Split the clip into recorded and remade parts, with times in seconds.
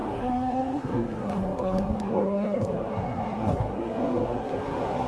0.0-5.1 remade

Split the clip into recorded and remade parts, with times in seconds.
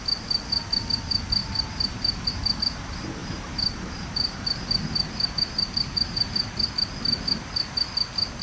0.0-1.4 recorded; 1.4-2.3 remade; 2.3-3.2 recorded; 3.2-6.3 remade; 6.3-8.4 recorded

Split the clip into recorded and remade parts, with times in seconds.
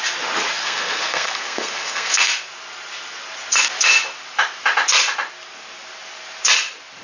0.0-0.6 recorded; 0.6-2.5 remade; 2.5-7.0 recorded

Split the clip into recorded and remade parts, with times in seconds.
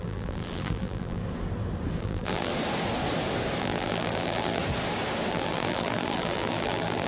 0.0-1.2 remade; 1.2-2.0 recorded; 2.0-2.5 remade; 2.5-3.6 recorded; 3.6-4.6 remade; 4.6-5.3 recorded; 5.3-7.1 remade